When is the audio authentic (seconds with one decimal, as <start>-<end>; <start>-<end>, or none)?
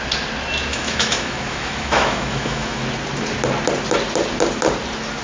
0.0-0.7; 2.8-5.2